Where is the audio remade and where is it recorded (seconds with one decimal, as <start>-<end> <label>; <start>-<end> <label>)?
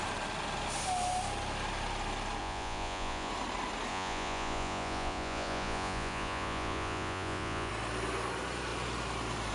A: 0.0-2.4 recorded; 2.4-3.3 remade; 3.3-3.9 recorded; 3.9-7.7 remade; 7.7-9.5 recorded